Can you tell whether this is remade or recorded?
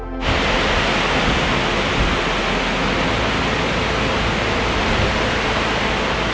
recorded